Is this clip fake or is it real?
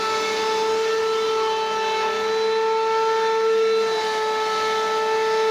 real